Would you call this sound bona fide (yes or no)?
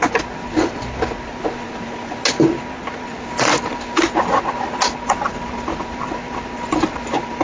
yes